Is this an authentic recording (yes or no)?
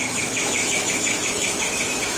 no